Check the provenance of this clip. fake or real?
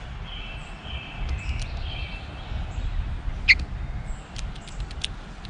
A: real